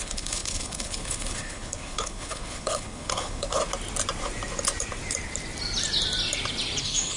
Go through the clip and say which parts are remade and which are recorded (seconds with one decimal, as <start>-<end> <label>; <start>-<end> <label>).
0.0-3.6 remade; 3.6-6.8 recorded; 6.8-7.2 remade